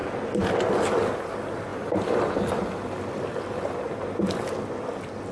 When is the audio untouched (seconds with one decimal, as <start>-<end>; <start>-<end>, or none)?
0.0-5.3

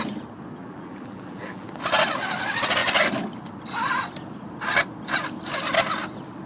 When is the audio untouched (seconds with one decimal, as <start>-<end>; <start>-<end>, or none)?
0.0-0.6; 1.7-6.5

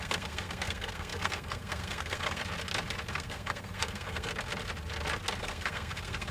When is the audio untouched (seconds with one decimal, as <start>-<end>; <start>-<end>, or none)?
2.4-3.1; 4.3-5.4

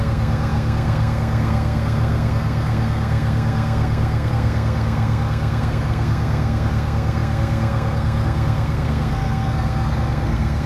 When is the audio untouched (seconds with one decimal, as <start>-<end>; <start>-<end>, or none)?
none

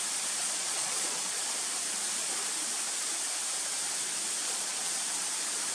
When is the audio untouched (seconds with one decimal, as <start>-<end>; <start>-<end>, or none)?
0.0-0.4; 1.4-4.4; 4.9-5.7

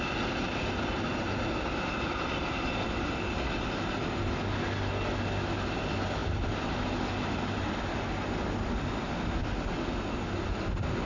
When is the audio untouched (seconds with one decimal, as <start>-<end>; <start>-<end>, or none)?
0.0-11.1